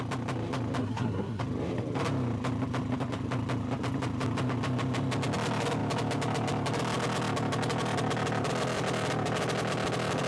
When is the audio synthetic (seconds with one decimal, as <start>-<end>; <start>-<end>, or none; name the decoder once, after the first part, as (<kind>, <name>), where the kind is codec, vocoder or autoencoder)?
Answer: 0.8-1.4 (codec, SNAC)